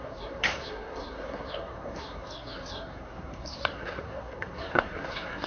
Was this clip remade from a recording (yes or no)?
yes